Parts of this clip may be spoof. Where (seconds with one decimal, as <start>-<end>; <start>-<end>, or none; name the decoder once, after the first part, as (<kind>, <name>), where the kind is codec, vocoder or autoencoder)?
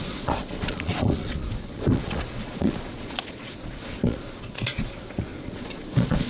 0.0-6.3 (vocoder, Vocos)